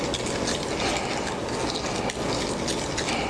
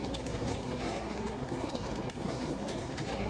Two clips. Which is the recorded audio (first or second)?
first